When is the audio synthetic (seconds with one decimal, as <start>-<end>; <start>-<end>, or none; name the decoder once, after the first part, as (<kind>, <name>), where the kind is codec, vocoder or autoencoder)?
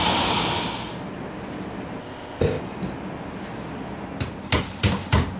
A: 2.0-2.6 (codec, ZipCodec)